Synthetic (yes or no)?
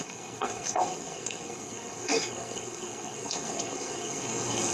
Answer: yes